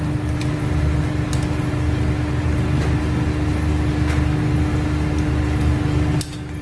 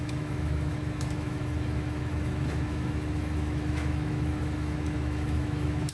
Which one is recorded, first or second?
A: first